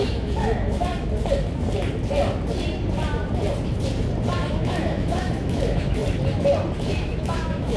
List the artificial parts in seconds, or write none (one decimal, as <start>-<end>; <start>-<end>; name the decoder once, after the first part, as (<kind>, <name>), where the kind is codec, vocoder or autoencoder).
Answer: 0.0-0.9 (autoencoder, DAC-VAE); 4.5-6.0; 6.8-7.8